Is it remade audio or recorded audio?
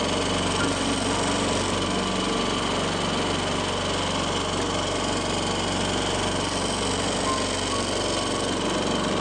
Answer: recorded